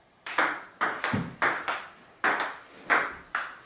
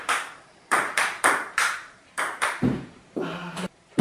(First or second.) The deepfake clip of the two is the second